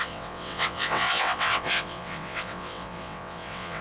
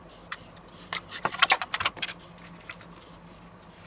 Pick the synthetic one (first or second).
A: first